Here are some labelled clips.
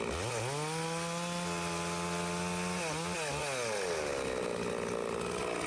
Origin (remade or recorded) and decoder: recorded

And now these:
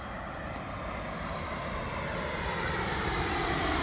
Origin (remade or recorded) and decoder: recorded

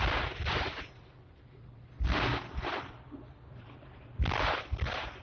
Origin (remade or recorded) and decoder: remade, vocoder, BigVGAN v2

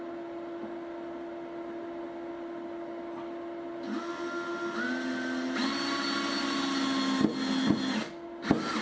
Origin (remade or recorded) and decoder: recorded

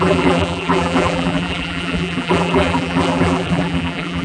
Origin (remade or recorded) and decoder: remade, vocoder, BigVGAN v2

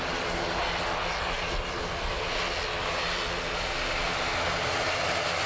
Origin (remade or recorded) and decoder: recorded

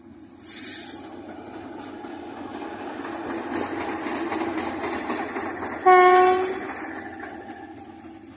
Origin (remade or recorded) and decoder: recorded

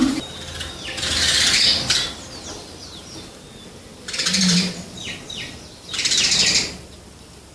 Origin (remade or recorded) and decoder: recorded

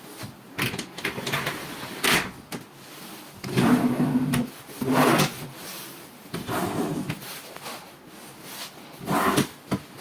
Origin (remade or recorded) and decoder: recorded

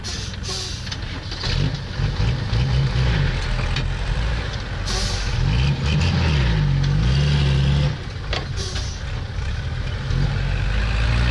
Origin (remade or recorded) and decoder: recorded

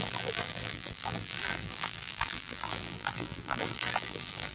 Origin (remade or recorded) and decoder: remade, vocoder, BigVGAN v2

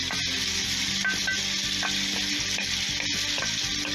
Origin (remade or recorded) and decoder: recorded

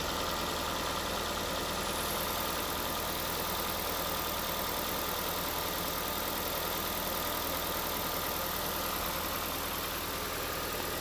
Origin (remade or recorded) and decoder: recorded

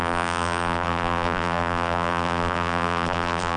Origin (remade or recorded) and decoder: remade, vocoder, BigVGAN v2